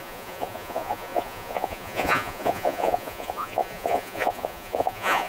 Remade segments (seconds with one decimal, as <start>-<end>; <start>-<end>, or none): 0.0-5.3